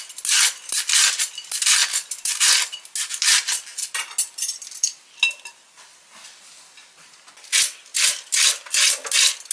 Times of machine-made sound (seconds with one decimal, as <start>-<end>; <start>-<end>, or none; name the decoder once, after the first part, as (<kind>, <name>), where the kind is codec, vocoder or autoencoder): none